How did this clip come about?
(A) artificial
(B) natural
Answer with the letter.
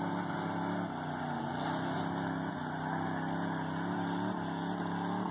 B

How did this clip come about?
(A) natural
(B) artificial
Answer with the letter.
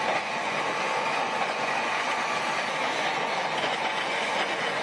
B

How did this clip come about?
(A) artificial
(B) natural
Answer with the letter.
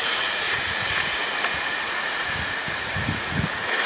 A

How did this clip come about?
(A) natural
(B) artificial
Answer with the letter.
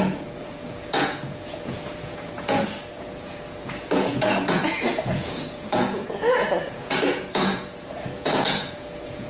B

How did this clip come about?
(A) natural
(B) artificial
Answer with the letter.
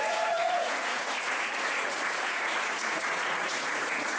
B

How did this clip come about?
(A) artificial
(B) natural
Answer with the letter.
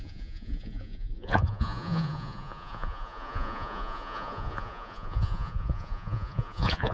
A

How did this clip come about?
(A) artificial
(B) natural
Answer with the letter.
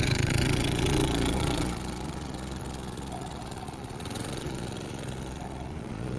A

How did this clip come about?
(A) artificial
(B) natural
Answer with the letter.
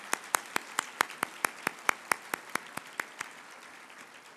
B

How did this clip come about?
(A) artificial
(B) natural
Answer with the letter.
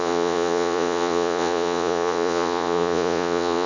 A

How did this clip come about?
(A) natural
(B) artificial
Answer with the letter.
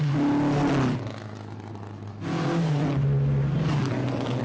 A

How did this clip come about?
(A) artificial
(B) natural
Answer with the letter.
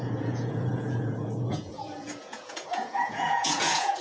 A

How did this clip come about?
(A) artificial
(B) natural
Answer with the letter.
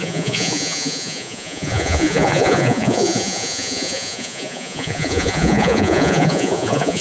A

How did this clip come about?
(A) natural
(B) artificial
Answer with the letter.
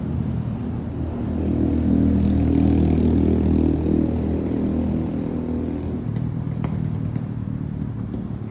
A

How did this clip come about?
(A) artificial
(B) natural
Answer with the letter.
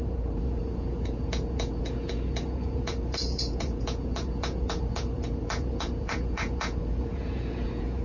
A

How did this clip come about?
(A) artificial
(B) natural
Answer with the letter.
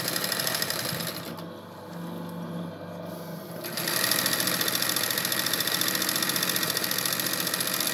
B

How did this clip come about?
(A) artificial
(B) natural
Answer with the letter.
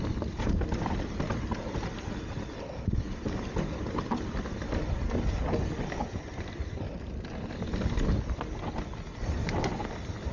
B